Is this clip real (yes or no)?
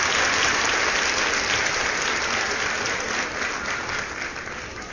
yes